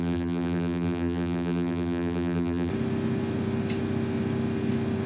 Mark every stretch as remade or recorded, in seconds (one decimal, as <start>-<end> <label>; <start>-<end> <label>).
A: 0.0-2.7 remade; 2.7-5.1 recorded